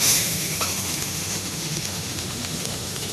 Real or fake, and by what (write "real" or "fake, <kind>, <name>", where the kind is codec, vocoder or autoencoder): fake, autoencoder, DAC-VAE